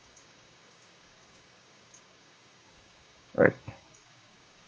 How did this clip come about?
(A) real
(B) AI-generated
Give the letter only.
B